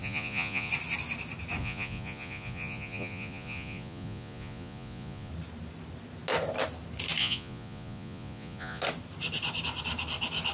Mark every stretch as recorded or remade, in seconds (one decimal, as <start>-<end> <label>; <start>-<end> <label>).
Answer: 0.0-0.7 remade; 0.7-1.6 recorded; 1.6-5.3 remade; 5.3-7.2 recorded; 7.2-8.8 remade; 8.8-10.5 recorded